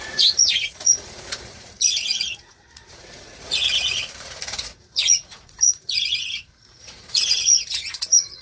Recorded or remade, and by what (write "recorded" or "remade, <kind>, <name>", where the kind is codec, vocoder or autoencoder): remade, vocoder, Vocos